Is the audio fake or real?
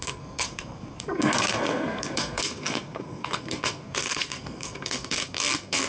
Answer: fake